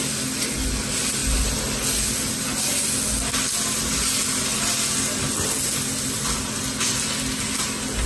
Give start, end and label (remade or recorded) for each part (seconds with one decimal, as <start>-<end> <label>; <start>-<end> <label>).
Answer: 0.0-8.1 recorded